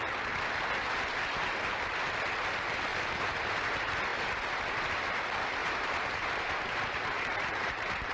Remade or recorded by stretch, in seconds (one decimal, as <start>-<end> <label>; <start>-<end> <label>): 0.0-2.9 recorded; 2.9-3.6 remade; 3.6-5.6 recorded; 5.6-8.1 remade